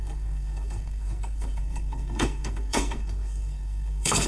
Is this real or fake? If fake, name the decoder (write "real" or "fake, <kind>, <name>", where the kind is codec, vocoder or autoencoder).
fake, codec, SNAC